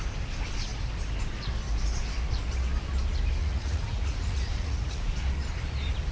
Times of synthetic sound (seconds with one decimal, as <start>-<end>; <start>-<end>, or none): 3.4-5.1